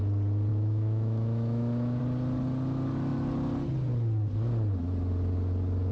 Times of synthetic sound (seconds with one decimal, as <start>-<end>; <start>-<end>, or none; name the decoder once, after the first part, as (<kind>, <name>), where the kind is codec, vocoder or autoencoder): 0.5-2.0 (autoencoder, DAC-VAE)